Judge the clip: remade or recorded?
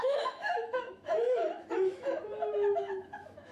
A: remade